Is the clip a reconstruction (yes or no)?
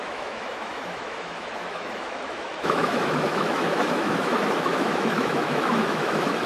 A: yes